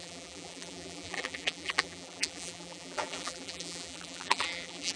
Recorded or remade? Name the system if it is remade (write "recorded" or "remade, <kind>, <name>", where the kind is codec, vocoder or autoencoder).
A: remade, vocoder, BigVGAN v2